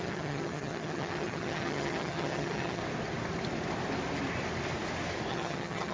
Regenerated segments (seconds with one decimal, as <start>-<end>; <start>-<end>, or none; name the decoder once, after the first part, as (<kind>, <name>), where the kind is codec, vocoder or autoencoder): 0.0-2.8 (vocoder, HiFi-GAN); 5.3-5.9